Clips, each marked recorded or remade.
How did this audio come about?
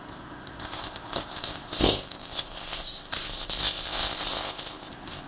remade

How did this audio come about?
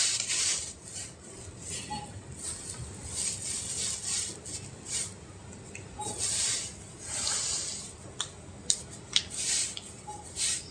recorded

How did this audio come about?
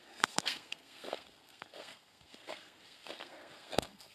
remade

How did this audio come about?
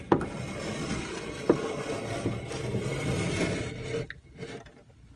recorded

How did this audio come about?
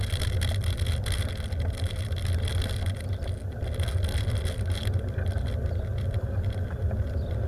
recorded